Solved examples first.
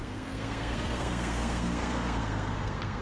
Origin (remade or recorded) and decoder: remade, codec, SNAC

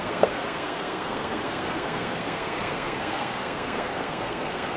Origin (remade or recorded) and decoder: remade, codec, SNAC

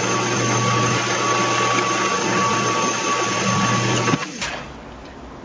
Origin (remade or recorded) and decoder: recorded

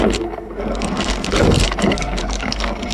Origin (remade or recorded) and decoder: remade, codec, SNAC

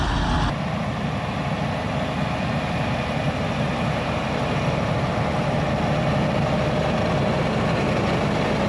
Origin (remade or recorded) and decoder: recorded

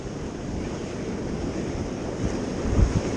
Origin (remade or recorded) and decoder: recorded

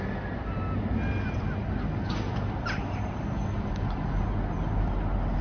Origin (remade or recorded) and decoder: recorded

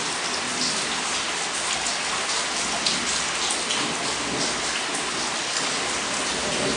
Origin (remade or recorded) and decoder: recorded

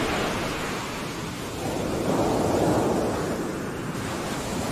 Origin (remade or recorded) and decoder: recorded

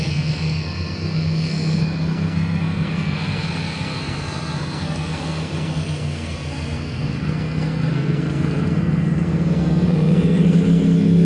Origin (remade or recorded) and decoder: remade, codec, SNAC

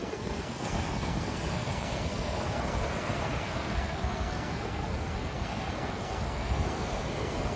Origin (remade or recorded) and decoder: remade, codec, SNAC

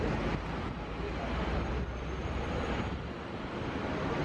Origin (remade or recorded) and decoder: recorded